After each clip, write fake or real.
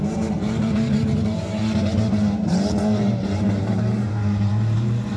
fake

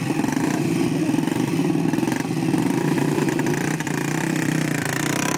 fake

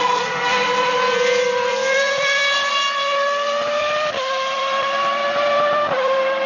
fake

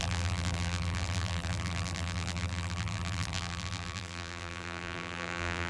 fake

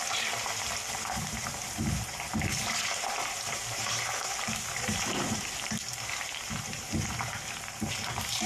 fake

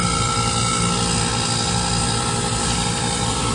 real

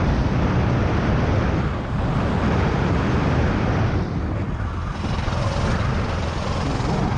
real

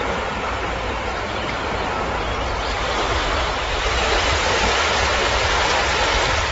fake